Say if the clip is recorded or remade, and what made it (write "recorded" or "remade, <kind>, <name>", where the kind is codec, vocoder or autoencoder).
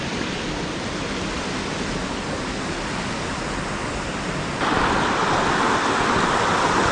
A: recorded